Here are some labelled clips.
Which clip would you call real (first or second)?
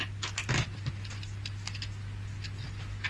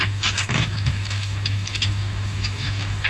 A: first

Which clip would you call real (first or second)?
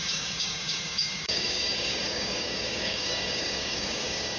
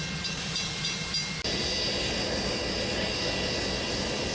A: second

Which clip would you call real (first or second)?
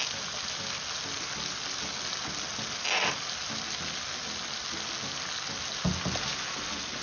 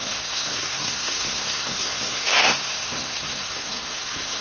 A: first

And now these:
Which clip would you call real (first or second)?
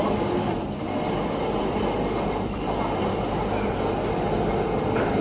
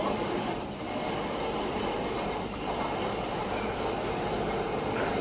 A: first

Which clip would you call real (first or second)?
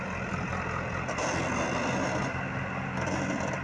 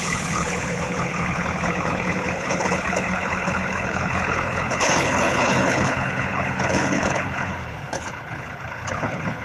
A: first